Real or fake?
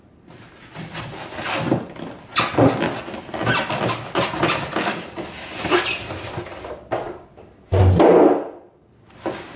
real